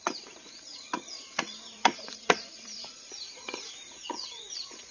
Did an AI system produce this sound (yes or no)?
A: yes